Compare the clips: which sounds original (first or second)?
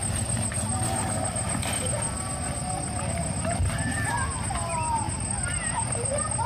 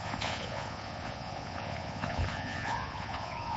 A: first